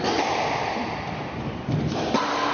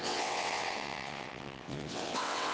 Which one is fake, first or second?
second